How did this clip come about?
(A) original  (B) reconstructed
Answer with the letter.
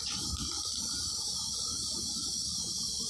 A